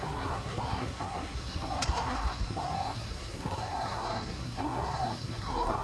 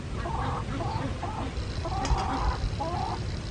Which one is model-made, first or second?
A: first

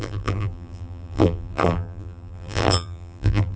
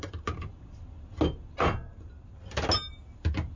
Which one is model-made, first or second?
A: first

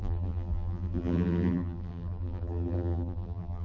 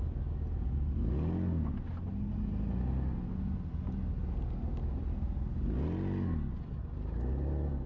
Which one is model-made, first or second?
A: first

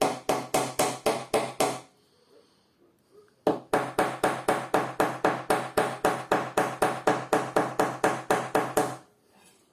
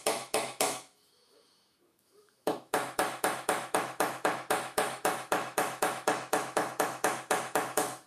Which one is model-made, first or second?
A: second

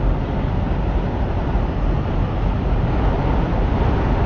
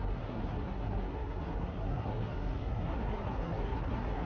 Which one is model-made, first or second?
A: second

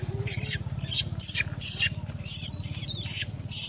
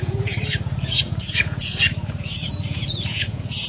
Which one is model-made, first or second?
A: second